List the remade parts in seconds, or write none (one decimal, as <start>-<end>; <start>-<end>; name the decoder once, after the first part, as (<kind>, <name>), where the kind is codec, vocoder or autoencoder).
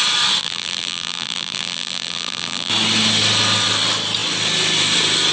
0.4-2.7 (vocoder, BigVGAN v2)